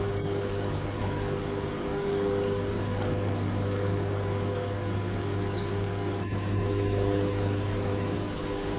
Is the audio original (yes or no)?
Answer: no